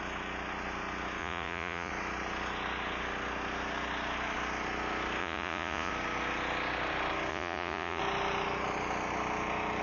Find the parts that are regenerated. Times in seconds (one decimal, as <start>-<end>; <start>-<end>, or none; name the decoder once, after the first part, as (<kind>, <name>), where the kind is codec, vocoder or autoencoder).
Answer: 1.2-1.9 (vocoder, Vocos); 5.2-5.9; 7.3-8.0